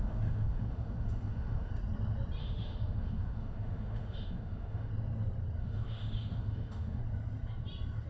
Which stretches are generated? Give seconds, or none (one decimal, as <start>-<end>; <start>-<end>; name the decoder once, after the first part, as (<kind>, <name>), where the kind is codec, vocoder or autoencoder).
0.0-1.7 (autoencoder, DAC-VAE); 2.4-4.9; 5.6-7.0